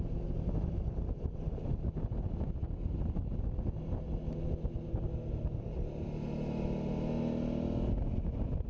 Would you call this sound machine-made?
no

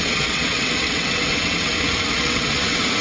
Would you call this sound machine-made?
yes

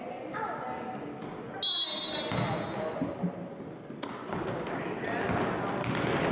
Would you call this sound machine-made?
no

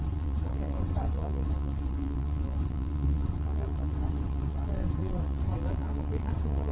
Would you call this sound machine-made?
yes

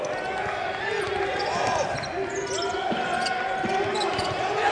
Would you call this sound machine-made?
no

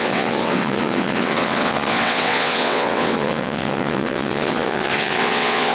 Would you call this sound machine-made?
yes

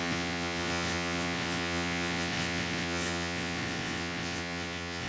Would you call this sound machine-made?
yes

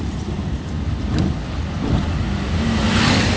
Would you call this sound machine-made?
no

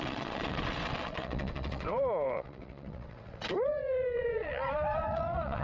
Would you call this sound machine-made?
yes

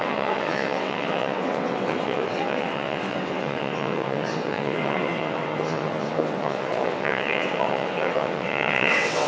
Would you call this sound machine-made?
yes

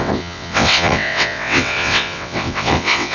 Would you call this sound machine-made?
yes